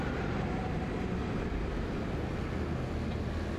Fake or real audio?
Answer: real